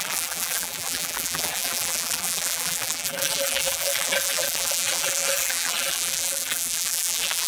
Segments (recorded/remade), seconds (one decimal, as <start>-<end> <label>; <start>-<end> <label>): 0.0-7.5 remade